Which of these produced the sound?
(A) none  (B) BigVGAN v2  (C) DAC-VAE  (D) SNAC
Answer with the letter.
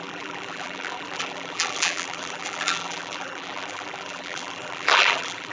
B